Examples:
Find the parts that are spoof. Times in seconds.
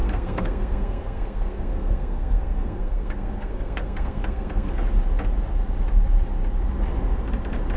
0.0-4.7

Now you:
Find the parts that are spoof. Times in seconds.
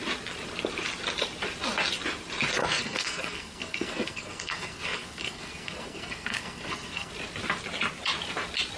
2.6-7.1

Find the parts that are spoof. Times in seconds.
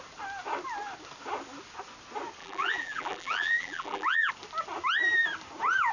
2.4-4.3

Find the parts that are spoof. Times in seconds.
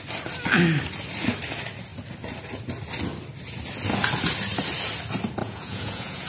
5.4-6.3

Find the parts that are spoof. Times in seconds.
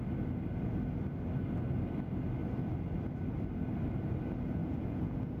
4.6-5.4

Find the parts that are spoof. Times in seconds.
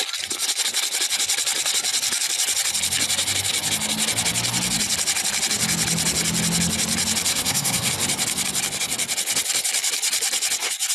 7.3-7.9